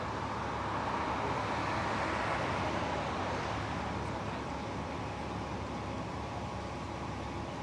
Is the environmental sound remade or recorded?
recorded